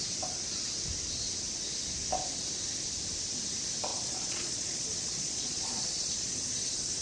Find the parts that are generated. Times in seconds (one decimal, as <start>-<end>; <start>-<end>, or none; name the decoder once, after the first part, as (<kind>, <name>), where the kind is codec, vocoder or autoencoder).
3.9-6.3 (vocoder, Vocos)